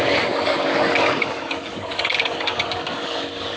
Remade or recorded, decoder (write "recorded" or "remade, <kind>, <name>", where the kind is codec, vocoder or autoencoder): remade, codec, DAC